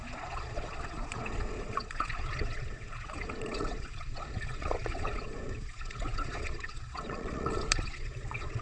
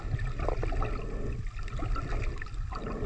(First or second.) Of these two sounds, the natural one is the second